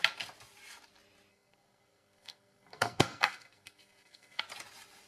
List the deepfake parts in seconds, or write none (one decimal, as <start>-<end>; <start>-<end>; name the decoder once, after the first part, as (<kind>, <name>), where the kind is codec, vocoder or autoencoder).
1.3-4.4 (codec, SNAC)